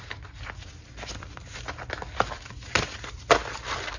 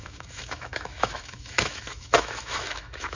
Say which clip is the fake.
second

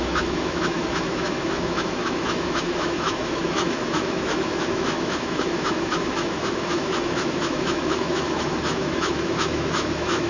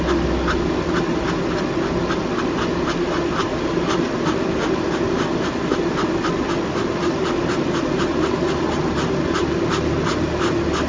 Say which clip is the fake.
first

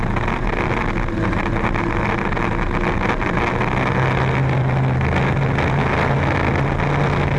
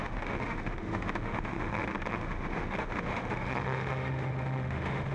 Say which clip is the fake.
second